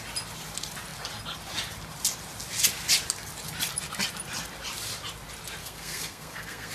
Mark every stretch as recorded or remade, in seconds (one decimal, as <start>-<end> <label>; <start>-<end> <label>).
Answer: 0.0-5.6 recorded; 5.6-6.7 remade